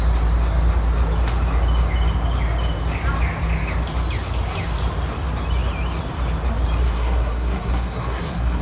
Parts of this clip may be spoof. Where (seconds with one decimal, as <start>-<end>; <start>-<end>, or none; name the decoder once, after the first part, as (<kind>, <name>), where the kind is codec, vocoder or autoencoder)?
6.8-8.6 (codec, SNAC)